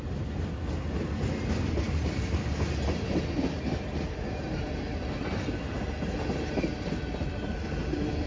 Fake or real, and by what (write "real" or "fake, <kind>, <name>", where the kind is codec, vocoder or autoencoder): real